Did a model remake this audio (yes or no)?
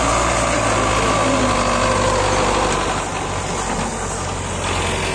no